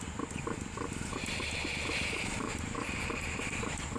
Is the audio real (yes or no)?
yes